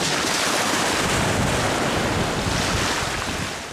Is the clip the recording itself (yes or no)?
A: yes